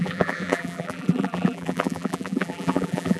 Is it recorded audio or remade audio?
remade